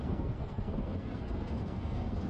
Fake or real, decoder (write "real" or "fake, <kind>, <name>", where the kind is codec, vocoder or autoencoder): fake, codec, SNAC